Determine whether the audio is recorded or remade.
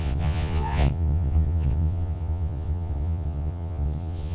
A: remade